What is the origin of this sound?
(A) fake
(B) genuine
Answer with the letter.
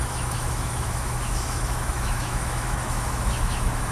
A